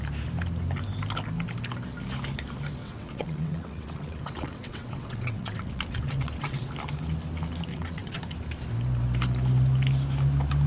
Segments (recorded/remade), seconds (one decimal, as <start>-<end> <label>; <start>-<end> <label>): 0.0-2.8 recorded; 2.8-6.7 remade; 6.7-7.7 recorded; 7.7-8.2 remade; 8.2-10.7 recorded